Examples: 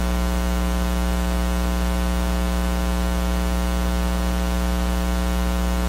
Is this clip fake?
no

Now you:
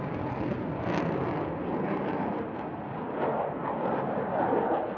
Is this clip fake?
no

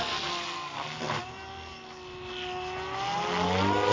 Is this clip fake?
no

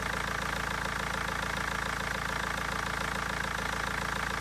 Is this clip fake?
no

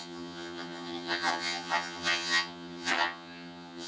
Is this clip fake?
yes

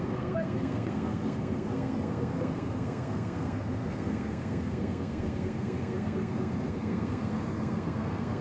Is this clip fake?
yes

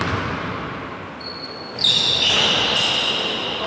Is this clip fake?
no